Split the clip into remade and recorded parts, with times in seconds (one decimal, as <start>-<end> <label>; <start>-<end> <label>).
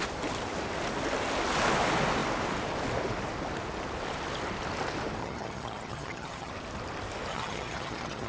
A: 0.0-5.2 recorded; 5.2-6.5 remade; 6.5-7.3 recorded; 7.3-8.3 remade